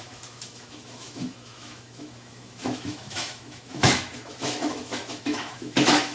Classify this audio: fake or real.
fake